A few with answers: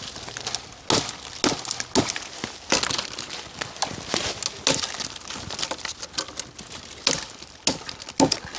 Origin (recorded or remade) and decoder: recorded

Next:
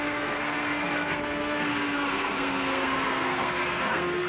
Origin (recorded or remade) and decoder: remade, codec, SNAC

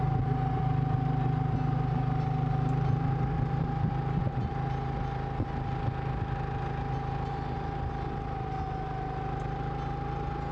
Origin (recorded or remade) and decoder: recorded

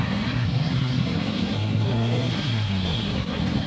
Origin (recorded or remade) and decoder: remade, codec, SNAC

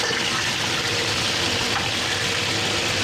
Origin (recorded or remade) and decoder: recorded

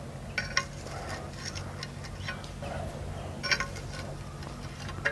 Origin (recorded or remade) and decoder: recorded